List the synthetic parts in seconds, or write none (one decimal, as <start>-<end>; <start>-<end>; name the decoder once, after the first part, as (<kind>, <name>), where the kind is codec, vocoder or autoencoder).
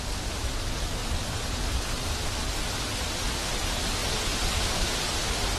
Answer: 1.0-2.1 (vocoder, BigVGAN v2)